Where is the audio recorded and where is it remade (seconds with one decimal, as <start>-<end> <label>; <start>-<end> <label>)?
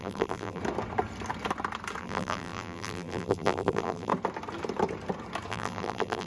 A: 0.0-0.6 remade; 0.6-2.0 recorded; 2.0-4.1 remade; 4.1-5.5 recorded; 5.5-6.3 remade